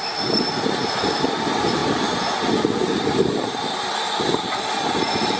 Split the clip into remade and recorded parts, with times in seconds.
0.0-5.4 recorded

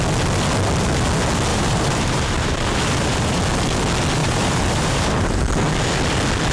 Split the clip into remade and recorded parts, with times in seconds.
0.0-1.5 recorded; 1.5-3.4 remade; 3.4-4.2 recorded; 4.2-5.5 remade; 5.5-6.5 recorded

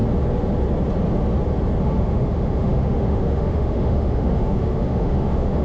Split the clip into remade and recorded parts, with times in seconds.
0.0-1.8 recorded; 1.8-5.6 remade